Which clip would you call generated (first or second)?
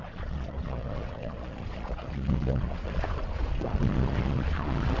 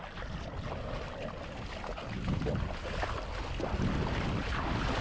first